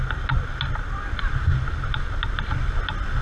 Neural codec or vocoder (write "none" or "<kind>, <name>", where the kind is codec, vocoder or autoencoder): none